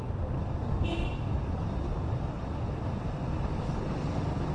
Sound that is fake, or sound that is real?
real